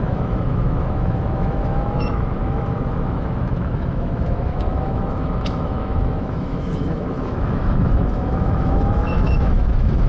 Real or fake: fake